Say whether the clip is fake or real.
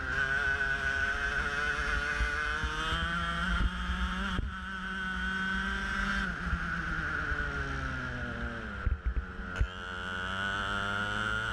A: real